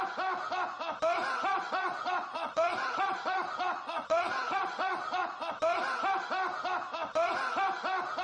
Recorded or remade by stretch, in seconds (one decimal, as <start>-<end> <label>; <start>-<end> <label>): 0.0-1.5 recorded; 1.5-5.5 remade; 5.5-8.2 recorded